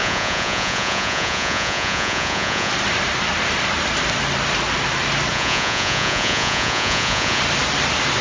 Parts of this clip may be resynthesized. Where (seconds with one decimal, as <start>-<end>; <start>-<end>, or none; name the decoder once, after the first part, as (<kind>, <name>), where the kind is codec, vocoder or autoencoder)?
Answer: 0.0-2.7 (vocoder, Vocos); 5.3-7.4